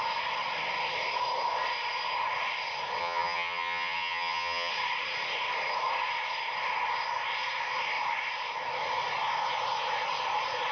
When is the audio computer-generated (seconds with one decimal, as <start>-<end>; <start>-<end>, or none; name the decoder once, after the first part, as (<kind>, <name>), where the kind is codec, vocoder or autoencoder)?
3.0-4.7 (vocoder, HiFi-GAN)